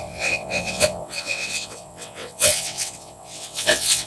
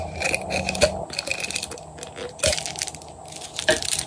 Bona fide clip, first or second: second